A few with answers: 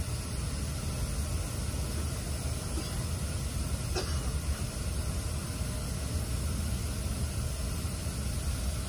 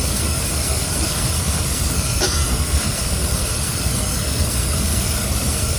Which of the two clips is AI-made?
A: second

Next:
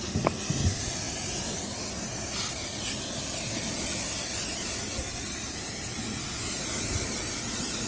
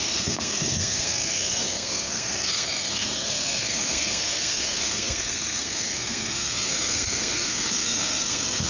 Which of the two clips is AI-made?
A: second